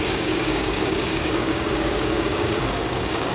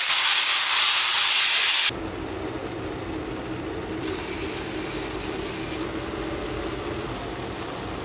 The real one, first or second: second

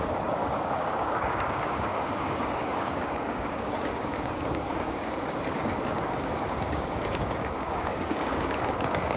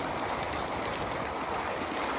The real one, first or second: second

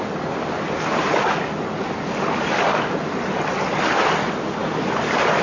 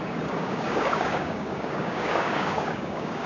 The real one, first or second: first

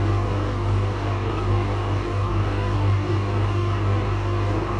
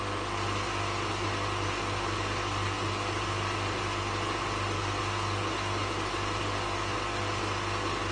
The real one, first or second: second